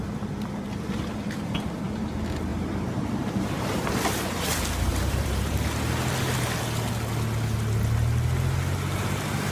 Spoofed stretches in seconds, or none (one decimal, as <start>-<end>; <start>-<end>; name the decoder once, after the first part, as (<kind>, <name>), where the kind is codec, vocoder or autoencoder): 2.5-3.9 (vocoder, BigVGAN v2); 4.9-5.5